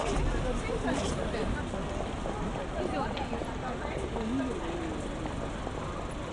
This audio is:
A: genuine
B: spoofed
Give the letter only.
A